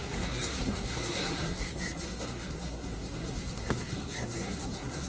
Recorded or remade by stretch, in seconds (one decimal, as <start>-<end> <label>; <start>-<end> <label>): 0.0-5.1 remade